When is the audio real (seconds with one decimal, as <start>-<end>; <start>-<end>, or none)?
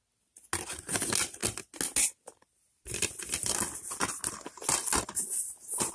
0.0-5.9